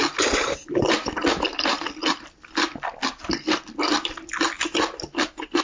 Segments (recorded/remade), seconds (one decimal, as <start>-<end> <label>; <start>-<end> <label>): 0.0-5.6 recorded